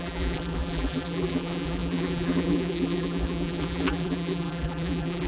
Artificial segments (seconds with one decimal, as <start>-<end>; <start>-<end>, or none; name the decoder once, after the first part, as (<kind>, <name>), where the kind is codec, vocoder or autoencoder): 0.0-5.3 (vocoder, BigVGAN v2)